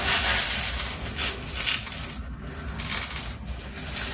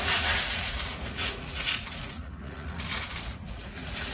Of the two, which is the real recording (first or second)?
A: first